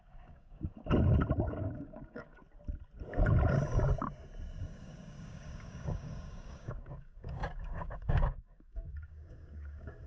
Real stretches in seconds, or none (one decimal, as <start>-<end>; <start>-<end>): 0.7-1.5; 2.4-4.6